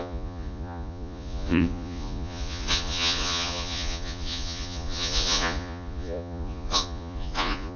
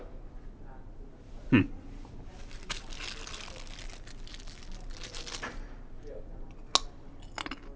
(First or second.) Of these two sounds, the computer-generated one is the first